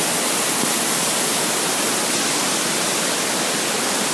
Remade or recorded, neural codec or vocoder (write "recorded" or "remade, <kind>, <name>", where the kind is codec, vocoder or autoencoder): recorded